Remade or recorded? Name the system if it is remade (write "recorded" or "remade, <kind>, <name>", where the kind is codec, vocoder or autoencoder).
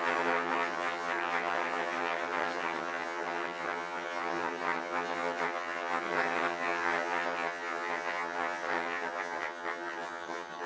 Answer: remade, vocoder, HiFi-GAN